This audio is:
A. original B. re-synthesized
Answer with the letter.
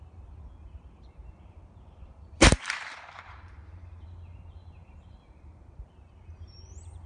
B